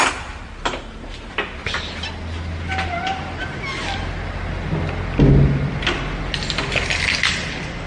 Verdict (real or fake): real